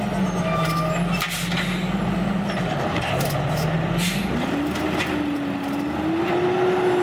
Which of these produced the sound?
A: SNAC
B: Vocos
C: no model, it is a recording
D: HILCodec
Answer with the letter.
C